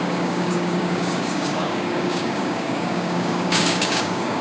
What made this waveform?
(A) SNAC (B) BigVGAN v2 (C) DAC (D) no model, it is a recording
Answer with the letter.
C